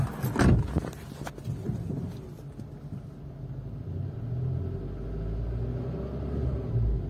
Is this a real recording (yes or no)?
yes